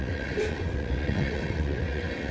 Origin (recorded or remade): remade